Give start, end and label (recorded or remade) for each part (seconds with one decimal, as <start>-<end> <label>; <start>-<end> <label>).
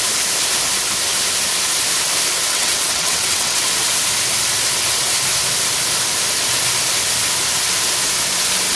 0.0-2.5 recorded; 2.5-3.6 remade; 3.6-8.8 recorded